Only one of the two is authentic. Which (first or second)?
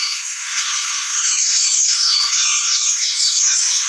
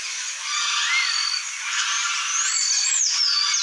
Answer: second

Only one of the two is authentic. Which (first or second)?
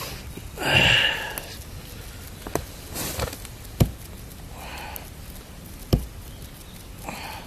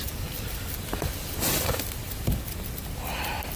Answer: first